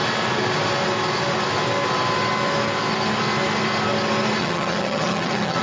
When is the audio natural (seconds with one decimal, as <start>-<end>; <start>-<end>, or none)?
0.0-4.4